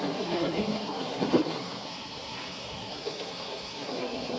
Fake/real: fake